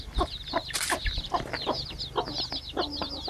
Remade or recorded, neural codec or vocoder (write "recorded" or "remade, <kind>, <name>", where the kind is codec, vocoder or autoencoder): remade, vocoder, BigVGAN v2